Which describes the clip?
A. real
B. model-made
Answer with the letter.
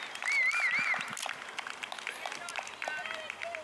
A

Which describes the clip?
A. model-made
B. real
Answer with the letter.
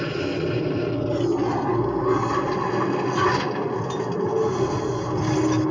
B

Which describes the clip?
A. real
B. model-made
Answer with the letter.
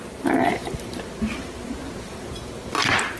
A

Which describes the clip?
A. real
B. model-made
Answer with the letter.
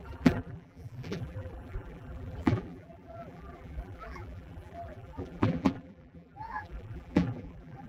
B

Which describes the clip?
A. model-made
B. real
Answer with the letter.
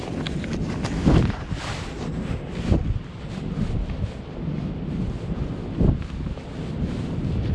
B